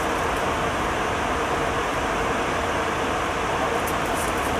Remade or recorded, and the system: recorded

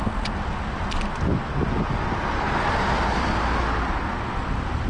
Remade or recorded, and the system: recorded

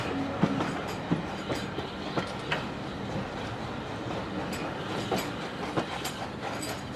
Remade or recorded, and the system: recorded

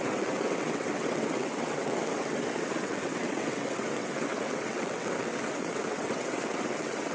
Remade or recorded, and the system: remade, vocoder, WaveNeXt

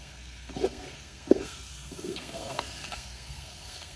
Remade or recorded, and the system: remade, codec, SNAC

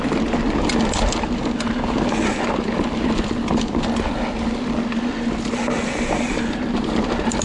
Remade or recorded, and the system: recorded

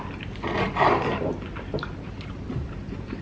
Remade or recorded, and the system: remade, vocoder, BigVGAN v2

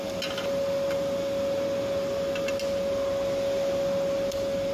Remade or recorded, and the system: recorded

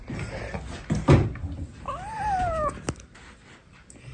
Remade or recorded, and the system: recorded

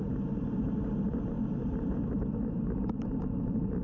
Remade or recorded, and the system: remade, vocoder, BigVGAN v2